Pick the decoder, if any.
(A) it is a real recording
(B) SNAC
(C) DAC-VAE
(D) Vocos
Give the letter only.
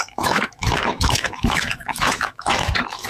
C